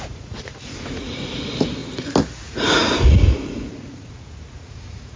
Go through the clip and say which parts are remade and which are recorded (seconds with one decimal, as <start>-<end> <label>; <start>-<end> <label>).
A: 0.0-1.8 remade; 1.8-2.4 recorded; 2.4-5.2 remade

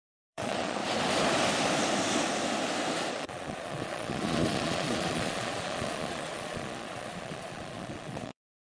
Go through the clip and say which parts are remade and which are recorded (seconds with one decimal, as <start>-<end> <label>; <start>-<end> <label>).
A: 0.0-0.8 remade; 0.8-3.1 recorded; 3.1-8.6 remade

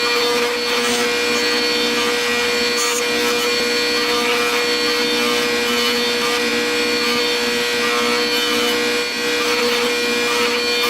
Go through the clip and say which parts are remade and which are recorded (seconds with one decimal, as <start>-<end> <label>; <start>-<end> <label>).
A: 0.0-10.9 recorded

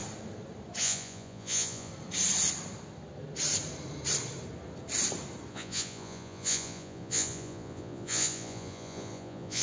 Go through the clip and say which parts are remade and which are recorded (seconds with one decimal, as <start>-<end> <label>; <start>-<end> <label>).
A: 0.0-0.8 recorded; 0.8-1.9 remade; 1.9-5.5 recorded; 5.5-9.6 remade

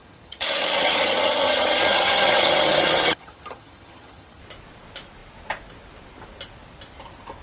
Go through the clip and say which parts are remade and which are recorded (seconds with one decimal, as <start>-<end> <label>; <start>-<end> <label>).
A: 0.0-4.4 remade; 4.4-7.4 recorded

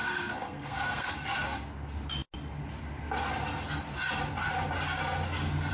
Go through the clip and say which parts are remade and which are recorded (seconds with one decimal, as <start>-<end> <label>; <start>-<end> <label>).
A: 0.0-1.1 remade; 1.1-5.7 recorded

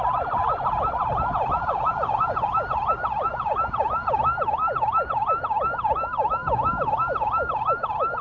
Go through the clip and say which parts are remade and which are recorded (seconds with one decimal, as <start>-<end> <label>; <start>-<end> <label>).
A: 0.0-8.2 recorded